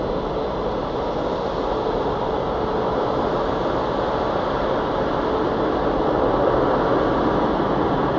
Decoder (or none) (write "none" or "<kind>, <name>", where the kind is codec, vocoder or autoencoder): none